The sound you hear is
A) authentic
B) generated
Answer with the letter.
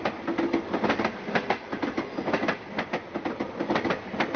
A